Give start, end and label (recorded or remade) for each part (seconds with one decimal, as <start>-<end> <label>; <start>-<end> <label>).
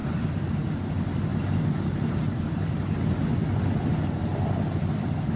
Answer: 0.0-0.7 remade; 0.7-1.3 recorded; 1.3-3.0 remade; 3.0-5.4 recorded